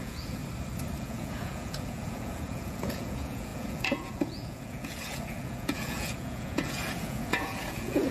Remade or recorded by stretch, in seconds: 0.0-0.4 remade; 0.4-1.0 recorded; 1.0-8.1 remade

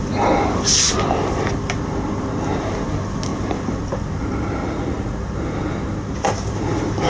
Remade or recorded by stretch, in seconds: 0.0-4.6 recorded; 4.6-5.2 remade; 5.2-7.1 recorded

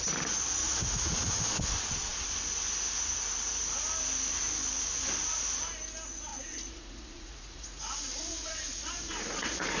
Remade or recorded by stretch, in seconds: 0.0-0.6 recorded; 0.6-1.4 remade; 1.4-6.3 recorded; 6.3-9.8 remade

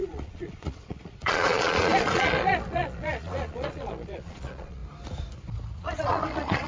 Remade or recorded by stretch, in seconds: 0.0-4.8 remade; 4.8-5.8 recorded; 5.8-6.7 remade

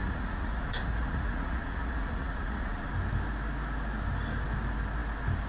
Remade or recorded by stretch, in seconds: 0.0-2.9 remade; 2.9-5.5 recorded